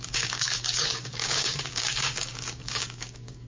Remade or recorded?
remade